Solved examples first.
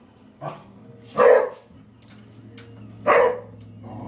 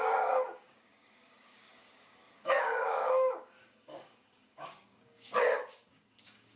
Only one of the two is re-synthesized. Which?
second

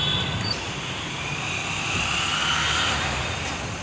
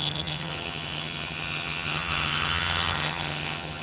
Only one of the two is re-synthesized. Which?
second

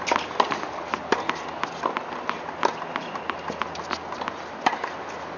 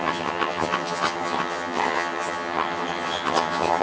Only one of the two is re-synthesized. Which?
second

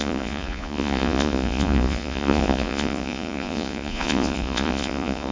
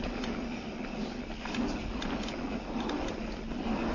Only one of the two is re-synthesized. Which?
first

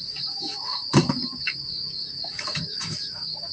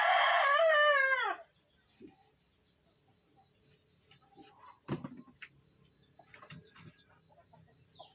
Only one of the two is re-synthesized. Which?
first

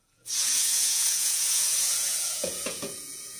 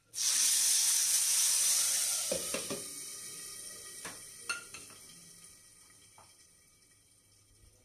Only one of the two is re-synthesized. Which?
first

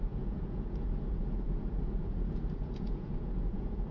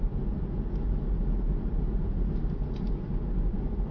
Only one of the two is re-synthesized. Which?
first